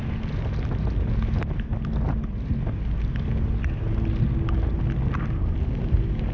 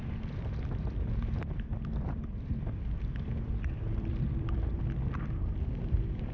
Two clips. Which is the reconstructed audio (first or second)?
second